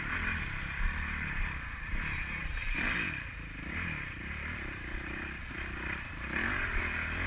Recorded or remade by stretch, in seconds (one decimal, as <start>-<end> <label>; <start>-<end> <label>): 0.0-2.4 recorded; 2.4-6.8 remade; 6.8-7.3 recorded